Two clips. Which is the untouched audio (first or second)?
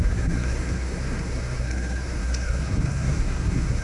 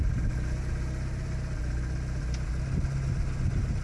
second